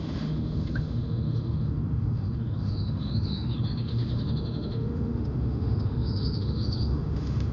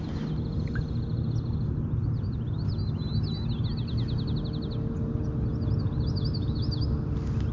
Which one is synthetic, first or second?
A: first